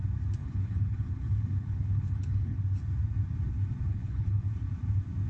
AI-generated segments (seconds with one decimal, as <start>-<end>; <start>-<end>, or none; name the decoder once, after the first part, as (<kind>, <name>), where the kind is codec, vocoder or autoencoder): 0.4-2.6 (codec, HILCodec); 3.9-4.4